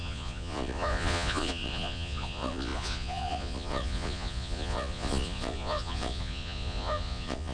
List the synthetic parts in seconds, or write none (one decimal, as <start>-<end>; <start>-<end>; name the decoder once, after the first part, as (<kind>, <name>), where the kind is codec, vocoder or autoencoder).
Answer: 0.0-7.5 (vocoder, Vocos)